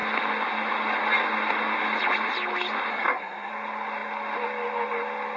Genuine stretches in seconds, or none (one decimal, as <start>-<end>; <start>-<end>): 0.0-2.9; 3.5-5.4